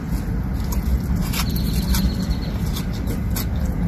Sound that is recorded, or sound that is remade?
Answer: recorded